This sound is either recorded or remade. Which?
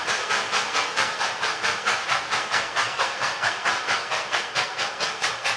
remade